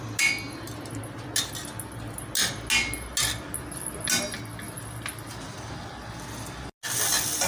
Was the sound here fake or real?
real